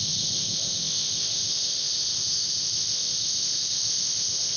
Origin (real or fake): fake